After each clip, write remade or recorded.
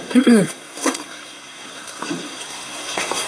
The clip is remade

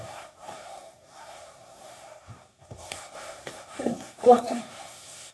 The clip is remade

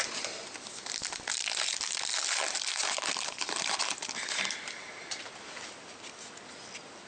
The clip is recorded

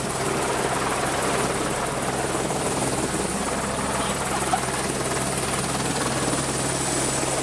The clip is recorded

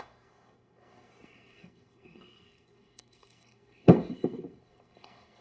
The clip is remade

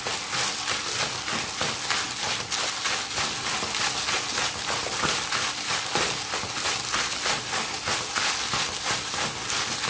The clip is recorded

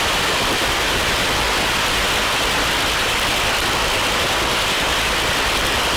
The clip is recorded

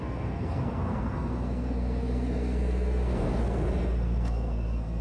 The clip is remade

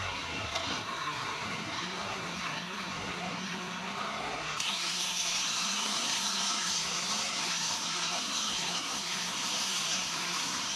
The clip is remade